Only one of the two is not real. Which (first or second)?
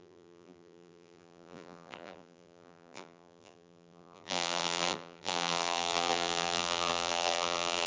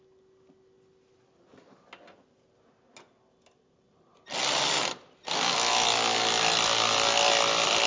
first